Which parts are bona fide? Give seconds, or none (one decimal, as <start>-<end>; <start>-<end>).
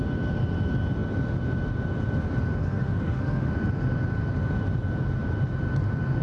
0.0-2.6; 3.5-6.2